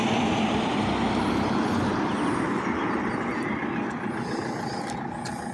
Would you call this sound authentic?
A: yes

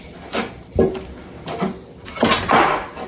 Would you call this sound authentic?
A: yes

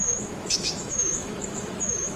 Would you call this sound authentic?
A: no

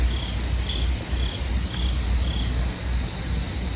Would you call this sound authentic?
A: yes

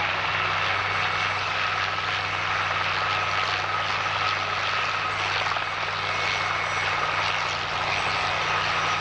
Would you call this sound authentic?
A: yes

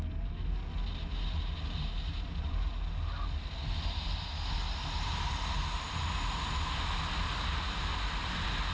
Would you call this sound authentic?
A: yes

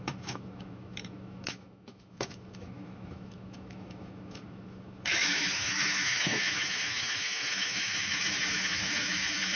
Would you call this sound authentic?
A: no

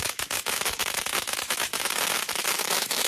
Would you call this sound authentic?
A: no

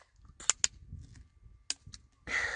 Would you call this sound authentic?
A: yes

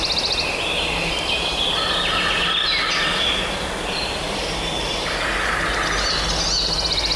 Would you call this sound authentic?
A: yes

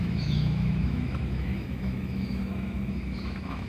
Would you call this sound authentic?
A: no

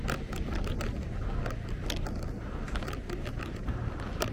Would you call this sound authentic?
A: yes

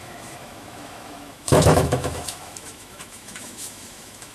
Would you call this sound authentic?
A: no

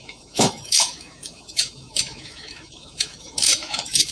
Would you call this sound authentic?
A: no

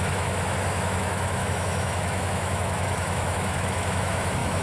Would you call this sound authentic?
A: no